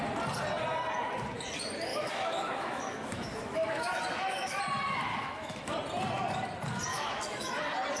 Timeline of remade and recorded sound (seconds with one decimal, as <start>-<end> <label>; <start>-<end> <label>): 0.0-1.9 recorded; 1.9-4.6 remade; 4.6-5.1 recorded; 5.1-5.7 remade; 5.7-6.9 recorded; 6.9-7.6 remade; 7.6-8.0 recorded